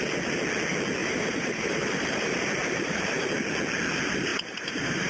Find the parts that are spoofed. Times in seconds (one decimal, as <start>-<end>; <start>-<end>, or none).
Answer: 1.0-3.3; 4.3-5.1